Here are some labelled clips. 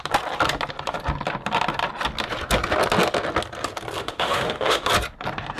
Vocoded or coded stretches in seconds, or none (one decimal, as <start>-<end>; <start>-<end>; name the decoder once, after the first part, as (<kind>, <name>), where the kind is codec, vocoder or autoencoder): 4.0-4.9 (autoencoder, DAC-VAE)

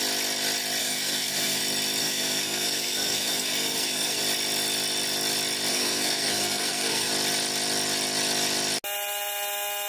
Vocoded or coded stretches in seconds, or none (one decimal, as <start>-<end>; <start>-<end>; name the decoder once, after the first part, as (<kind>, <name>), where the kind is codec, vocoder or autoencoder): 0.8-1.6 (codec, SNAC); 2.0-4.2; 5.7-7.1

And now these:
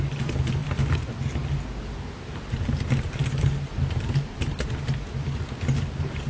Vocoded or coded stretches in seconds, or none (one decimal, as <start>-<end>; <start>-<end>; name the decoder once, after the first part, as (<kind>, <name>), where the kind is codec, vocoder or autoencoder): none